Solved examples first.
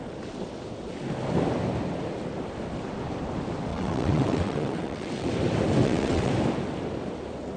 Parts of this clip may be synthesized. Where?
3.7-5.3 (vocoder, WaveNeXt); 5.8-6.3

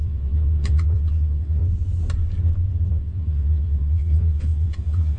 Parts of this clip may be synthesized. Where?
0.0-1.6 (vocoder, WaveNeXt); 2.9-5.2

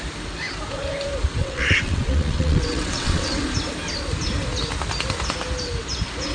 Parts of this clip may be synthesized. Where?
1.4-3.4 (vocoder, WaveNeXt)

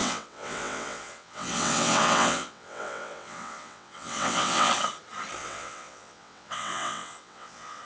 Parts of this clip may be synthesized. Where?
0.0-4.7 (vocoder, WaveNeXt); 5.4-7.8

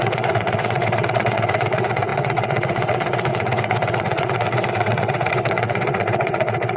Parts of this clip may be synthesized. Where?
0.0-6.8 (vocoder, WaveNeXt)

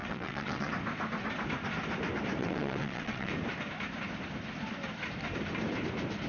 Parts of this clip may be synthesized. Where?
0.0-0.7 (vocoder, WaveNeXt); 2.4-3.3